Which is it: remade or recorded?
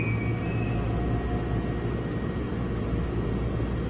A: recorded